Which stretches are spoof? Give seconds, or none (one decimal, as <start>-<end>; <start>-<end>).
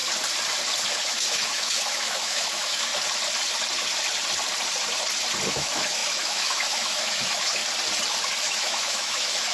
1.1-2.9; 5.5-7.6; 8.4-9.5